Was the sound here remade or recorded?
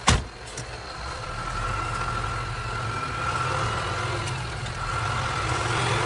recorded